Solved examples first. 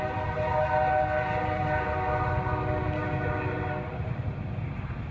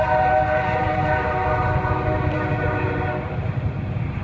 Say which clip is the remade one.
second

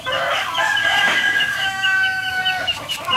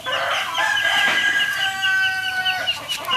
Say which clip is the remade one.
first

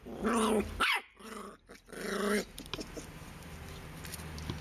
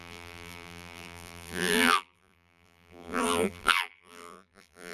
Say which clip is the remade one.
second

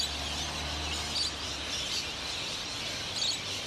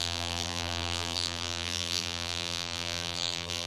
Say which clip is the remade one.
second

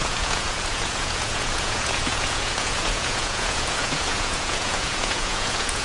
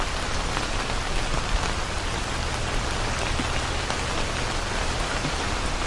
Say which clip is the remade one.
first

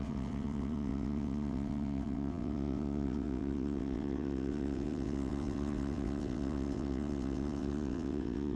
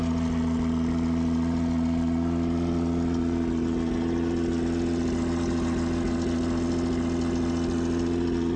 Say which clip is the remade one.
first